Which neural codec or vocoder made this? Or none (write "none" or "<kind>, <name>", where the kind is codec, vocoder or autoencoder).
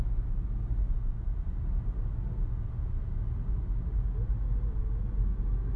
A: none